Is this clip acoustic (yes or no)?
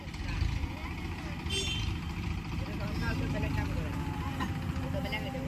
yes